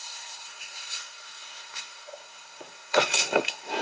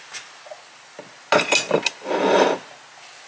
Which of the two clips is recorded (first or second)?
second